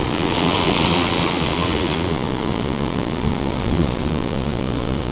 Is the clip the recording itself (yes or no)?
no